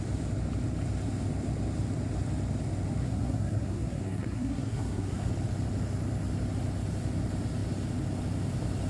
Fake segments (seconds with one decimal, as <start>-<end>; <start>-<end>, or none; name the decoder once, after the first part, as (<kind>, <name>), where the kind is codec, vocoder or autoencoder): 3.0-5.3 (codec, SNAC)